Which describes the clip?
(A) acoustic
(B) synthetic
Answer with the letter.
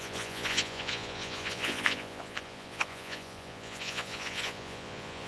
B